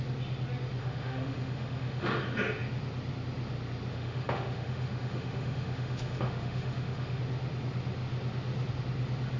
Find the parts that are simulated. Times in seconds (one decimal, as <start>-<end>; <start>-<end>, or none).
0.8-2.2; 3.9-7.2